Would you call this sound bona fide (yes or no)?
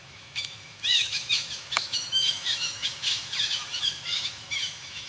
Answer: no